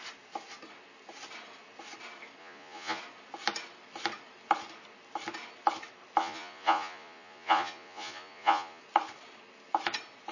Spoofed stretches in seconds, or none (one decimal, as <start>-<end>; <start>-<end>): 2.4-3.0; 6.2-8.8